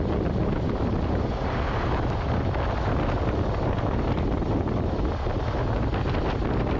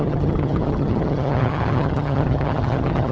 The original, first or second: first